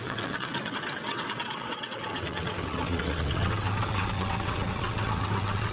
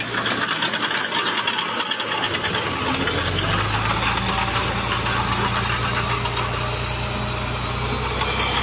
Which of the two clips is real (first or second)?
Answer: second